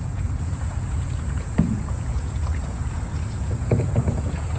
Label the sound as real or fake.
fake